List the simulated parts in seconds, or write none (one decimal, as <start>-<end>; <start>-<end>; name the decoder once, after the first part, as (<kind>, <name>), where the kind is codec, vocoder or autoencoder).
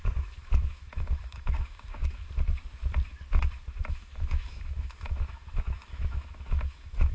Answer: 0.0-2.2 (autoencoder, DAC-VAE); 3.9-7.1